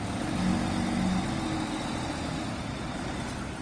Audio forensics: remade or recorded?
recorded